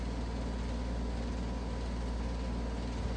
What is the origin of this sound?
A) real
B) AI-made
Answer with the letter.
A